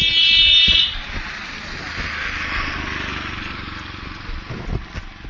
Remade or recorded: recorded